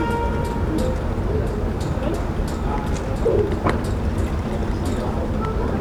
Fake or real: real